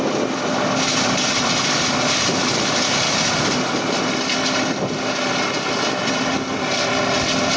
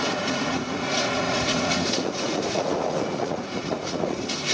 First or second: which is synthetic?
second